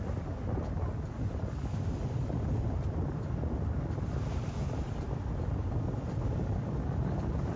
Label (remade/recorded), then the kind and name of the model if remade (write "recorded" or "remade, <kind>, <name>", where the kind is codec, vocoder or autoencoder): recorded